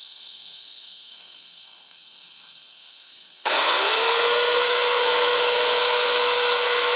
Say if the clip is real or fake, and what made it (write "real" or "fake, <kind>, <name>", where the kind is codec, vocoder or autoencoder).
fake, codec, SNAC